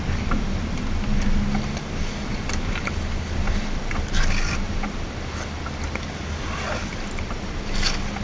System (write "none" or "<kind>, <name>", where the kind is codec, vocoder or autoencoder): none